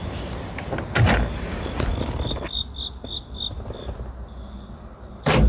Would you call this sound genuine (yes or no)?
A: yes